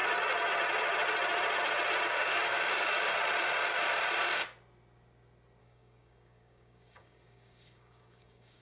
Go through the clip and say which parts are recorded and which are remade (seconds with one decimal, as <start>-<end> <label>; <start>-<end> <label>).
0.0-2.1 recorded; 2.1-3.1 remade; 3.1-5.6 recorded; 5.6-8.6 remade